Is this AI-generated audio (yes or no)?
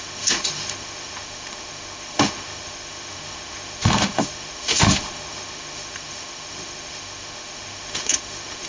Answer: yes